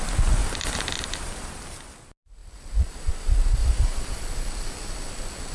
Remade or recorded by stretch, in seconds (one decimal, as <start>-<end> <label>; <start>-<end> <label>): 0.0-0.4 recorded; 0.4-1.8 remade; 1.8-3.6 recorded; 3.6-4.2 remade; 4.2-5.5 recorded